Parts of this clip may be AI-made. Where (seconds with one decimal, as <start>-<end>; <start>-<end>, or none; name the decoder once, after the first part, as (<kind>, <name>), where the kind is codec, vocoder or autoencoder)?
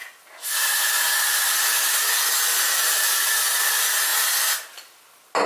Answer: none